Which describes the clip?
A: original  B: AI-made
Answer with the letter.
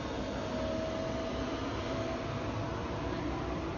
A